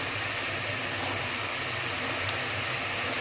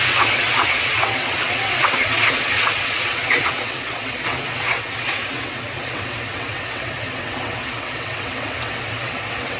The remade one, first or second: second